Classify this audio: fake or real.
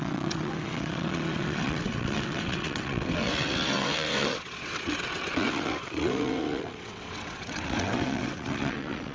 fake